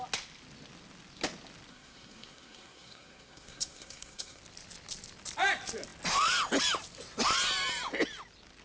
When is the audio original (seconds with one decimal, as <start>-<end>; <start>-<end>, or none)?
0.0-1.7; 4.4-8.6